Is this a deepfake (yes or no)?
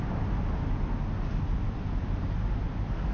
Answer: no